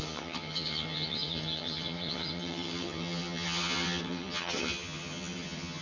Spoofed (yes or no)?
yes